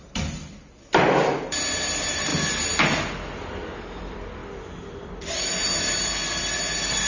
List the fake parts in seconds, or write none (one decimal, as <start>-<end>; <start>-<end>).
0.0-2.3; 4.0-7.1